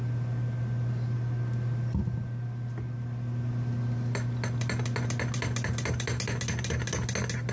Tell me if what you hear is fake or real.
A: real